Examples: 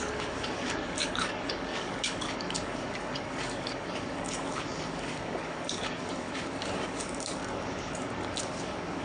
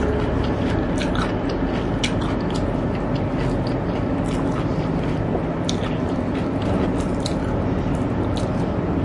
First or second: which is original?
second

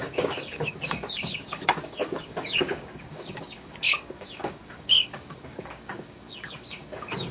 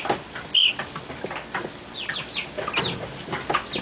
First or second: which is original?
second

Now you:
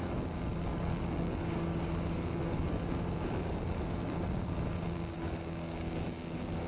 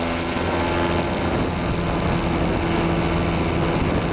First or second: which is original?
second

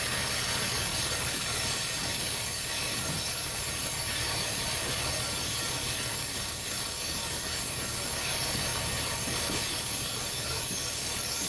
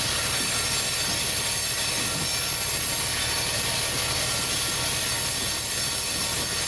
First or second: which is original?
second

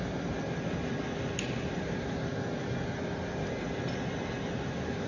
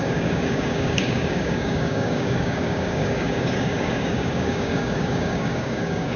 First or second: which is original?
first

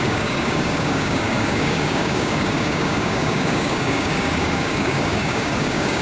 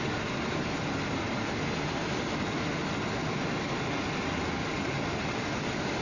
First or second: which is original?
second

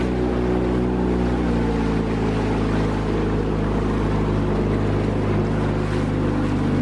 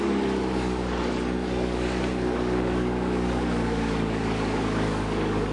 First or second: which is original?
first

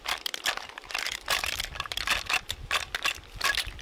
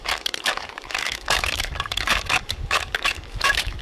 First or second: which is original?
first